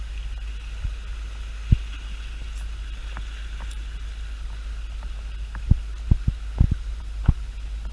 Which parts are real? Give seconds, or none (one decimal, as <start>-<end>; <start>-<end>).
0.0-7.9